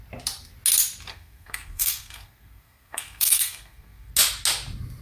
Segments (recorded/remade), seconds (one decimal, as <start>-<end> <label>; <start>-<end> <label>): 0.0-1.1 recorded; 1.1-4.1 remade; 4.1-5.0 recorded